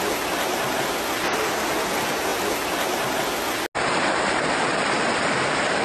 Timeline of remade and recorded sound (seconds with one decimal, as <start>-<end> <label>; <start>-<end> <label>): 0.0-5.8 recorded